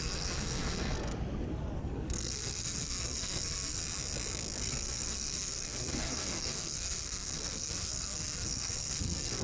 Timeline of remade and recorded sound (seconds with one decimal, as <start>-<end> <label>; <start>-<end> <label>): 0.0-1.1 remade; 1.1-1.8 recorded; 1.8-3.8 remade; 3.8-4.6 recorded; 4.6-9.4 remade